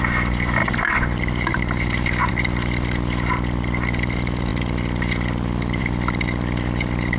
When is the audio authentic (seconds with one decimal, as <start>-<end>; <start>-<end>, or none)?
0.0-7.2